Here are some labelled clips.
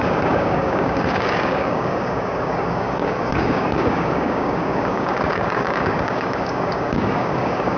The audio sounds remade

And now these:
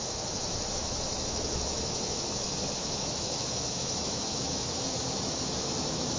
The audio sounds remade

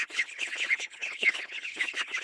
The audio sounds remade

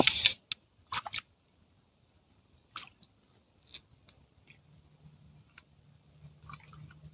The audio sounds recorded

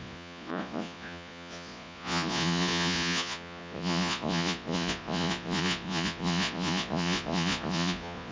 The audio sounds remade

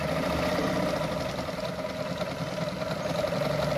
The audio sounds recorded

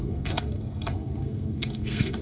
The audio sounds remade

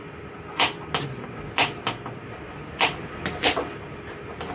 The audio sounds recorded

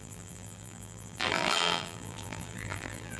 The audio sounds remade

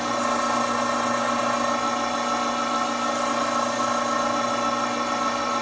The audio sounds recorded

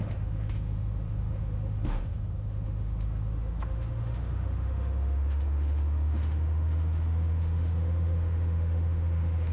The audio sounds remade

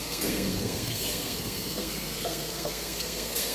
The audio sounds remade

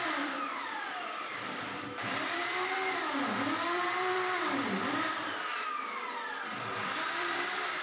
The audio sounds remade